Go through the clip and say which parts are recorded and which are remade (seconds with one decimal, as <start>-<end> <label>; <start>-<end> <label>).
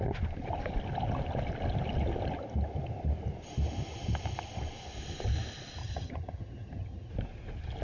0.0-5.8 recorded; 5.8-7.1 remade; 7.1-7.8 recorded